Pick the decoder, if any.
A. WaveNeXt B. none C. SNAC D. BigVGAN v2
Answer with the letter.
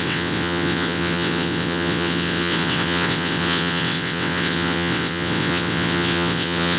A